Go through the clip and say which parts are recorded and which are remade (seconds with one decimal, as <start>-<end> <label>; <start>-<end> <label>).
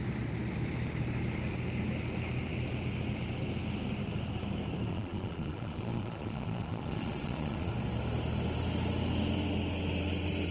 0.0-4.9 recorded; 4.9-7.7 remade; 7.7-10.5 recorded